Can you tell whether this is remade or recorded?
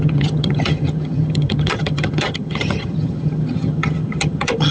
remade